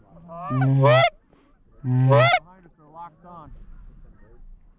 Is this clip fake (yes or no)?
no